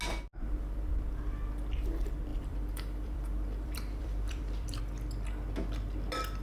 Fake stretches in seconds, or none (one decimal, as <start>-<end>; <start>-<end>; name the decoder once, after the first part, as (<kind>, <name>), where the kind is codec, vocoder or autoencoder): 2.3-4.8 (vocoder, BigVGAN v2)